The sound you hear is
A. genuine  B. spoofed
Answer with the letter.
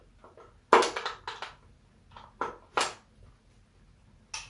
A